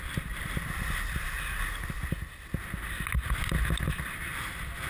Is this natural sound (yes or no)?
yes